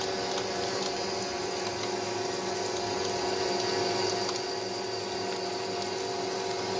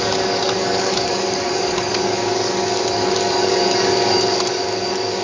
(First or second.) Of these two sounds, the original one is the first